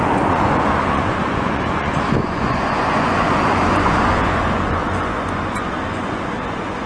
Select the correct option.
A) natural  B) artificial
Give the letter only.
B